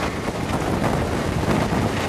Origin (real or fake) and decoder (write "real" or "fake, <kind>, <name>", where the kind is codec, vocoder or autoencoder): real